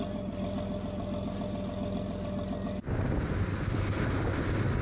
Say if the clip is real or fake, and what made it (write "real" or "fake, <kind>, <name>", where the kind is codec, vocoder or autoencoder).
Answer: real